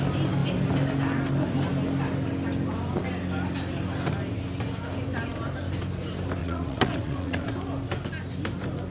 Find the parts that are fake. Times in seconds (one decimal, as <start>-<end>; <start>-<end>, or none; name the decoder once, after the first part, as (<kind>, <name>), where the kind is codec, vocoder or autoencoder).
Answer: 6.4-7.5 (vocoder, WaveNeXt)

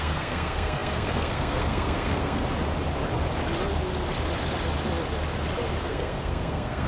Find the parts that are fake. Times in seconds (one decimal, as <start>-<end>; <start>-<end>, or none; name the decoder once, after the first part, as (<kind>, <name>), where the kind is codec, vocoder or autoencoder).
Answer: 0.0-2.4 (codec, SNAC); 5.8-6.9

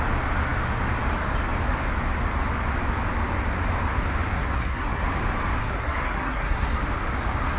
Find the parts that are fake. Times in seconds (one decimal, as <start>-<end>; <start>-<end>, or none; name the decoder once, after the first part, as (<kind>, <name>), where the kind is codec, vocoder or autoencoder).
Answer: 4.3-5.0 (codec, SNAC); 5.6-6.8

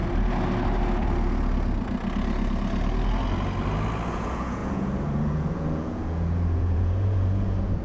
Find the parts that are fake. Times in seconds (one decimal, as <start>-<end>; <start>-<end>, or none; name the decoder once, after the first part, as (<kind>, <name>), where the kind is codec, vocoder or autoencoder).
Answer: 4.1-7.8 (vocoder, Vocos)

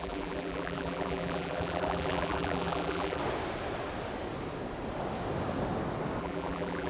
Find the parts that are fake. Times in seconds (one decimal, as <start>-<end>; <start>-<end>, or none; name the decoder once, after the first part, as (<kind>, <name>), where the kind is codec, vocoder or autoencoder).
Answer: 0.0-3.2 (vocoder, BigVGAN v2); 6.2-6.9

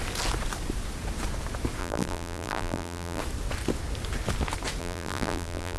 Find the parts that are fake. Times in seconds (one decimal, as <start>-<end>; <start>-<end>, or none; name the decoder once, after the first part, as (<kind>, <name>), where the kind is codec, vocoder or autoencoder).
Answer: 1.8-3.2 (vocoder, BigVGAN v2); 4.8-5.8